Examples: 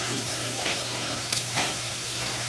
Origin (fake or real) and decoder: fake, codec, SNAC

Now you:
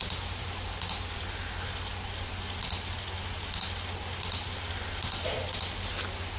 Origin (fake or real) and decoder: real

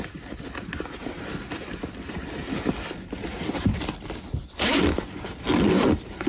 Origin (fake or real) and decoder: real